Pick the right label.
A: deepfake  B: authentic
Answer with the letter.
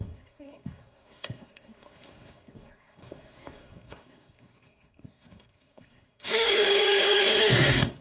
A